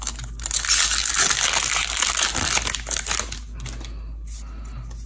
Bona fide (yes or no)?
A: yes